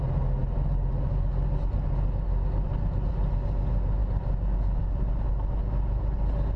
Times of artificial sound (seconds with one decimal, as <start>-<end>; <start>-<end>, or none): none